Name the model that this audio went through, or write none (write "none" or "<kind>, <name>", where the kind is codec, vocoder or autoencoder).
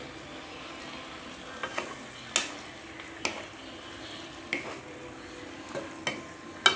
none